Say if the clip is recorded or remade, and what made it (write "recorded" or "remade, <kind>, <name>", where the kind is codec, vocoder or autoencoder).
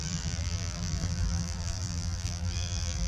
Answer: remade, vocoder, BigVGAN v2